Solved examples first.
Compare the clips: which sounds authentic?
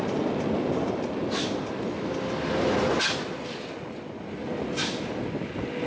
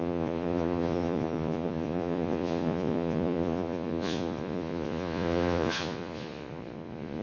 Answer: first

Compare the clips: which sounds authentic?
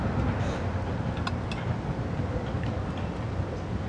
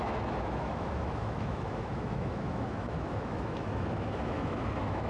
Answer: first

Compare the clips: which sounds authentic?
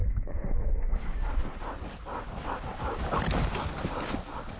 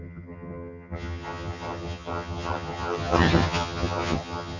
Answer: first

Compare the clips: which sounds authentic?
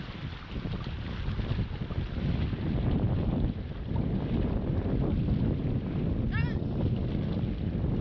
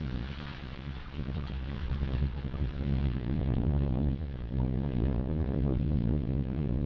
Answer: first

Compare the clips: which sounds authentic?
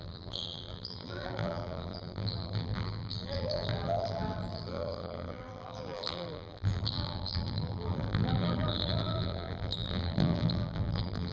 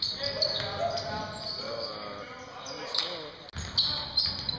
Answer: second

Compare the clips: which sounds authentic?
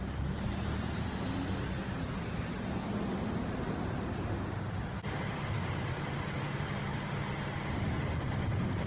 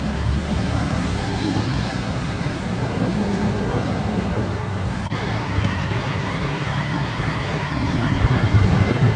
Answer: first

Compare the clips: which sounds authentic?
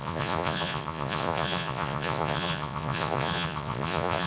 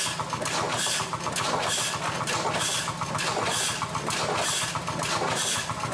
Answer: second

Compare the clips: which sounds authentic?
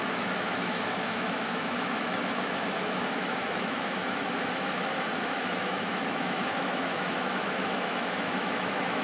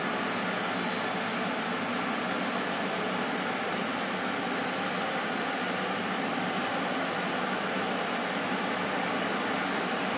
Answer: second